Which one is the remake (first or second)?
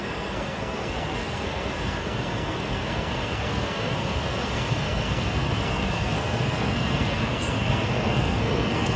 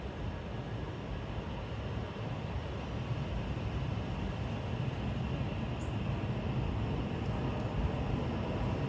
first